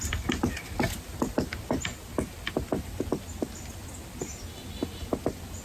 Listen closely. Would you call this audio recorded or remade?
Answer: recorded